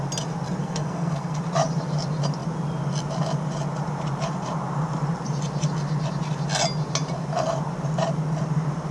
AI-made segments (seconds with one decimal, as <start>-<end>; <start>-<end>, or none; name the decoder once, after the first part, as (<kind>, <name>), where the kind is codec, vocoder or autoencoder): 0.6-1.4 (codec, SNAC)